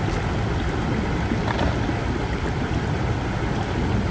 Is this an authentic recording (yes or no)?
yes